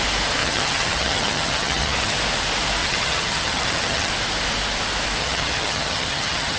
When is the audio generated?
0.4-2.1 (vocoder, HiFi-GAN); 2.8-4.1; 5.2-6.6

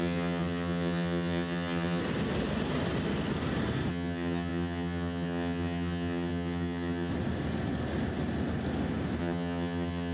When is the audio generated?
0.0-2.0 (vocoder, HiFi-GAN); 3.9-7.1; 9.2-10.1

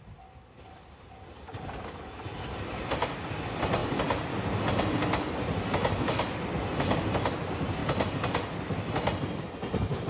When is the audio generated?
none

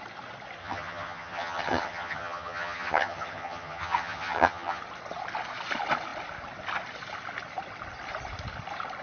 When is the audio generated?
0.6-4.8 (vocoder, HiFi-GAN)

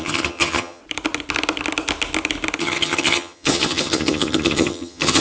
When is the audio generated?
0.0-0.8 (vocoder, HiFi-GAN); 2.6-5.2

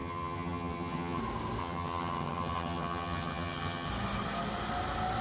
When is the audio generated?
0.0-1.2 (vocoder, HiFi-GAN); 1.6-3.9

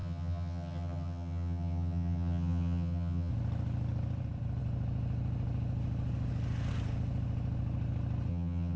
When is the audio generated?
0.0-3.3 (vocoder, HiFi-GAN); 8.3-8.8